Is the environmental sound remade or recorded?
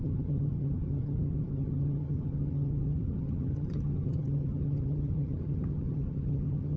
remade